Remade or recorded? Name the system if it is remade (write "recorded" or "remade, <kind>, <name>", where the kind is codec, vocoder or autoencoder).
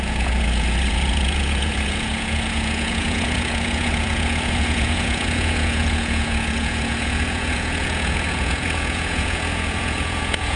remade, vocoder, Vocos